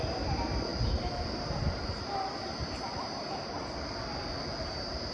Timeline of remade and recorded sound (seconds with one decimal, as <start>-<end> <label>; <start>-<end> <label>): 0.0-5.1 recorded